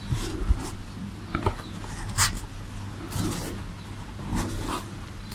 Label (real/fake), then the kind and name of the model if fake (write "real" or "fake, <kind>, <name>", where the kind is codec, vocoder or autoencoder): real